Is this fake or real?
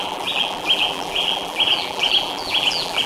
fake